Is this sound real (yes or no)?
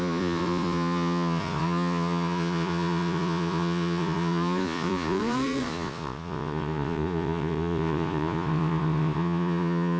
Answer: no